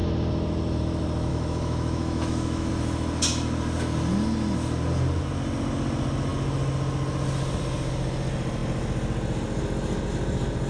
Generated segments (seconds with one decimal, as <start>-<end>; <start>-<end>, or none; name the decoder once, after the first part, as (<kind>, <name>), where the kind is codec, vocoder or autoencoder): 1.3-2.7 (autoencoder, DAC-VAE)